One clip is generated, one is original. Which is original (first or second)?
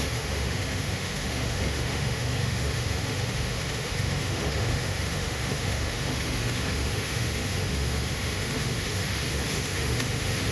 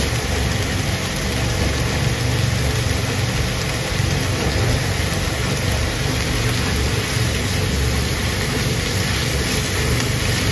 second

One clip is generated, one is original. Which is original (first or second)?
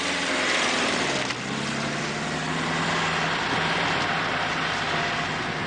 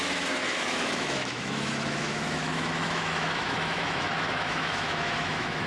first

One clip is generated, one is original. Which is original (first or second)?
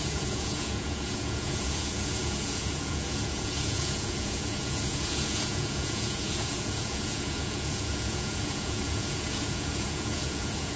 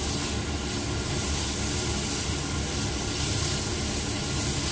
second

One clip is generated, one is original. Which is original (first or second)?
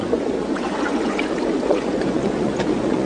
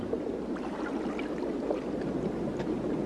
second